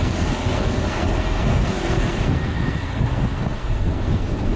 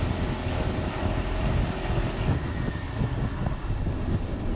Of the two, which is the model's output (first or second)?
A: first